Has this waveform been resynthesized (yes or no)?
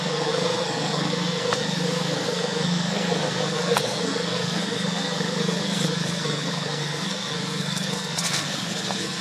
yes